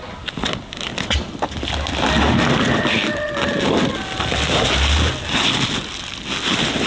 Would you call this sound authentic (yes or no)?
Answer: yes